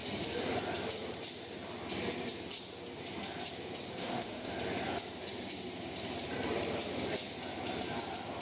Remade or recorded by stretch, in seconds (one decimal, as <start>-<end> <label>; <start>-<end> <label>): 0.0-4.0 recorded; 4.0-4.5 remade; 4.5-8.4 recorded